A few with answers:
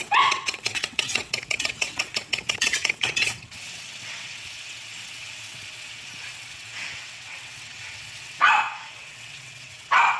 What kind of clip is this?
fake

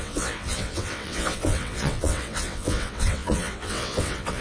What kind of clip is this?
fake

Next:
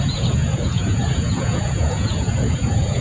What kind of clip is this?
fake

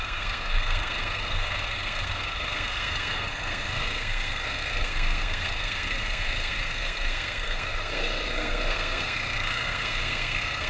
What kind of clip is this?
fake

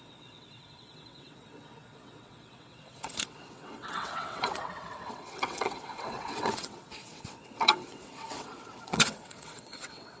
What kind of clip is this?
fake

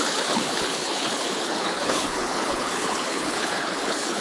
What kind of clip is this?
fake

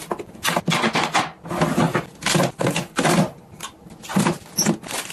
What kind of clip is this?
real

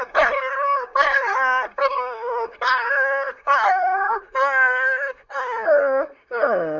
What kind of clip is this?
fake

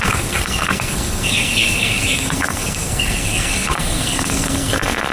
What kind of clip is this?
fake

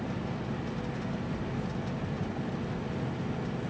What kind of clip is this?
real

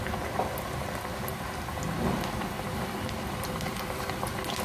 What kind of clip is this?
real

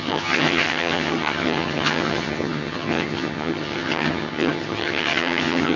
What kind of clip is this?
fake